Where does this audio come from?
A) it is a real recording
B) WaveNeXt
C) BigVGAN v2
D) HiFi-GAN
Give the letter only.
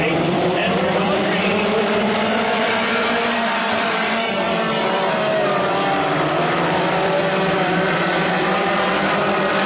C